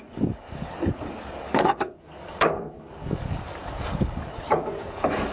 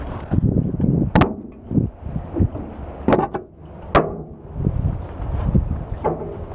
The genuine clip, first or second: second